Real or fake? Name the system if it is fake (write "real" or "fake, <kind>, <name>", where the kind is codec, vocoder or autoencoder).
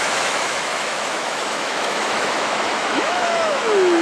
fake, autoencoder, DAC-VAE